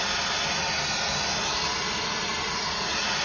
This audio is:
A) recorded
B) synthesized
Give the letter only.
A